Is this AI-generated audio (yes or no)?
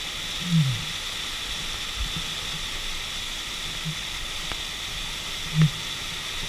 no